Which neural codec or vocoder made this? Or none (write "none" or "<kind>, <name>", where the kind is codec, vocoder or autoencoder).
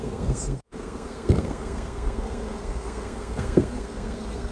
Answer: codec, SNAC